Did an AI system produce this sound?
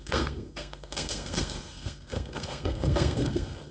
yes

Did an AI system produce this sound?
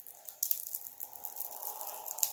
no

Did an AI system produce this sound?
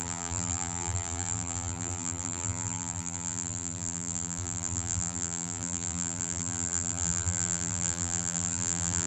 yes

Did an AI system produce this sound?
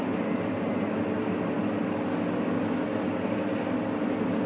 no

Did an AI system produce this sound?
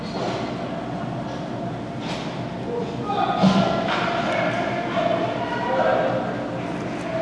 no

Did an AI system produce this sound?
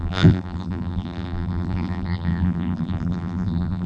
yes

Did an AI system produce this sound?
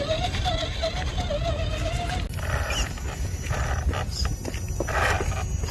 no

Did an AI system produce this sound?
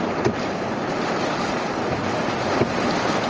no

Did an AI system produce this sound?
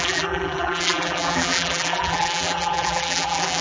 yes